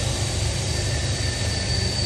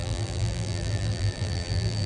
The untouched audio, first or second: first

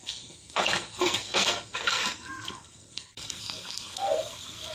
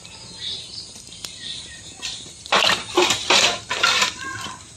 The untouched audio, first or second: second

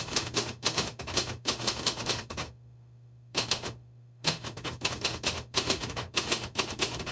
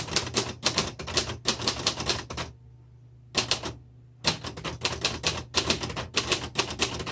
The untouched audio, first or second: second